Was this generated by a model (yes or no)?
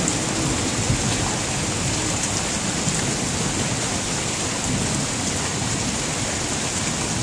no